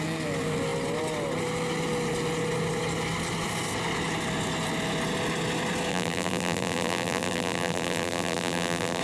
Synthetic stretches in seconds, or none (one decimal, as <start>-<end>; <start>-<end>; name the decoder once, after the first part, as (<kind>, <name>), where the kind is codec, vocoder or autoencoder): 5.9-9.0 (vocoder, BigVGAN v2)